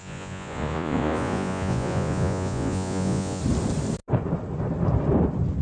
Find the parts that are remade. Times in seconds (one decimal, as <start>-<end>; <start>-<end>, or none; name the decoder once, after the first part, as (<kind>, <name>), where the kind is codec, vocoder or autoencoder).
0.0-3.4 (vocoder, Vocos)

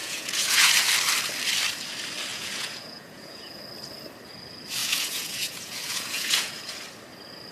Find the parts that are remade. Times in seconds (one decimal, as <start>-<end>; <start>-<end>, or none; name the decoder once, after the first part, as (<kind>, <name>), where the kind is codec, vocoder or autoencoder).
0.0-0.7 (vocoder, Vocos); 2.3-3.6; 4.8-6.7

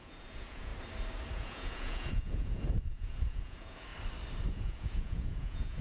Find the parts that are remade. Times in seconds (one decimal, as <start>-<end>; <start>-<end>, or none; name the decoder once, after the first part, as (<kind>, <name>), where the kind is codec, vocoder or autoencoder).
0.0-0.7 (vocoder, Vocos); 1.3-3.9; 4.5-5.8

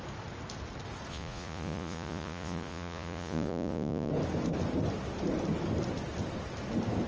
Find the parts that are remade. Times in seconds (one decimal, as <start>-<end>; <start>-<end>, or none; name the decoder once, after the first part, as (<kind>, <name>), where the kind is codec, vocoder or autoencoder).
1.1-4.1 (vocoder, Vocos)

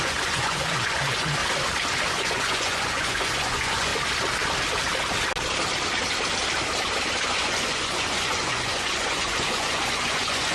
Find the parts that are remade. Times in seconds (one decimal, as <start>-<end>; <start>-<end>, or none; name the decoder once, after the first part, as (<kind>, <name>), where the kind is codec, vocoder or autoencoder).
0.0-1.4 (vocoder, Vocos); 2.1-3.9; 7.1-10.5

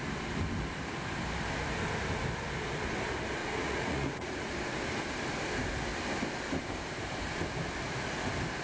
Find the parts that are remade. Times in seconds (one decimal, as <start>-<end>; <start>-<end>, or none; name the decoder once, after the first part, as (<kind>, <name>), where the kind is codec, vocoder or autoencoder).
3.4-4.5 (vocoder, Vocos)